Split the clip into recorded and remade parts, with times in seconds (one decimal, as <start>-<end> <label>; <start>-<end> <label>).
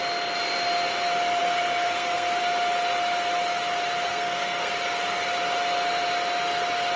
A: 0.0-1.4 recorded; 1.4-2.4 remade; 2.4-4.1 recorded; 4.1-4.7 remade; 4.7-7.0 recorded